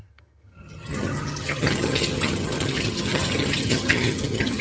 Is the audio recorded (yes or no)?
no